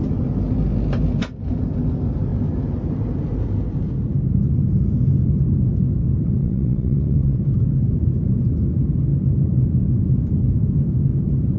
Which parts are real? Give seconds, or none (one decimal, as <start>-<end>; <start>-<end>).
0.0-6.4; 7.4-11.6